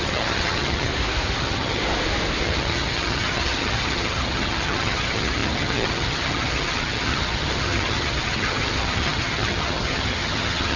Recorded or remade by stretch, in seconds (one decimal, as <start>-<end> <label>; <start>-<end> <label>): 0.0-0.9 remade; 0.9-1.4 recorded; 1.4-1.8 remade; 1.8-2.4 recorded; 2.4-10.8 remade